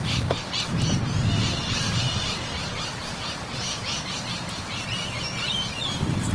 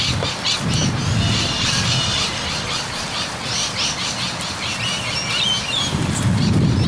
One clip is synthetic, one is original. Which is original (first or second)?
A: second